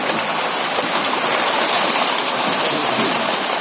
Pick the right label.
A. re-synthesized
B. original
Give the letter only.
B